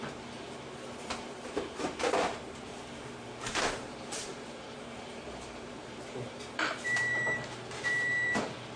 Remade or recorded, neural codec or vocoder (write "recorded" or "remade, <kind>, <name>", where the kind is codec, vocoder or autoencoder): remade, vocoder, BigVGAN v2